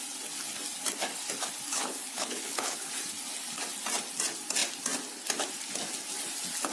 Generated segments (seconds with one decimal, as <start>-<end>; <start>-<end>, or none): 1.7-2.9